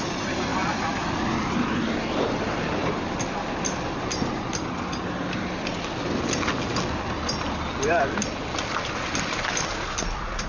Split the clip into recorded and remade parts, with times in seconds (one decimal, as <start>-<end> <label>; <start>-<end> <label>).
0.0-0.5 recorded; 0.5-1.8 remade; 1.8-2.8 recorded; 2.8-4.8 remade; 4.8-10.5 recorded